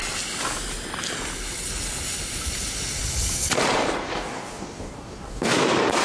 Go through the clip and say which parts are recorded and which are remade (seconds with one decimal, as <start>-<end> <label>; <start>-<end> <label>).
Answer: 0.0-4.1 recorded; 4.1-5.5 remade; 5.5-6.0 recorded